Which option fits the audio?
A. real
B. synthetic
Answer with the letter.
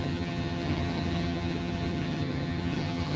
B